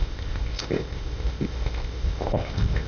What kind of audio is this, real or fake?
fake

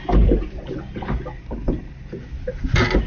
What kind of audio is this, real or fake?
real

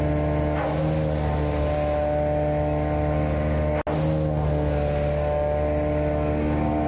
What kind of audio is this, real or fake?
real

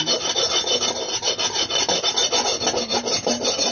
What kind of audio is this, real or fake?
real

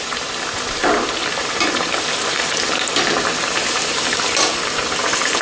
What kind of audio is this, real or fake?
real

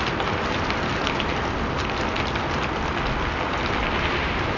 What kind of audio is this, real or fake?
real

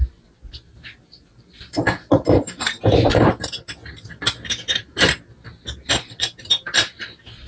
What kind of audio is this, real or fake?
real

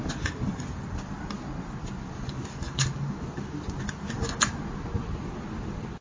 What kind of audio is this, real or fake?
real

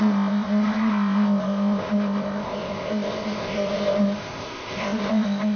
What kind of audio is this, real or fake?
fake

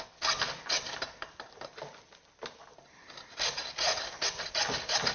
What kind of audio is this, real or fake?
real